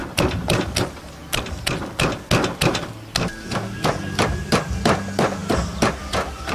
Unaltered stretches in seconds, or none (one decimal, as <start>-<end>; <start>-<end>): 0.0-6.5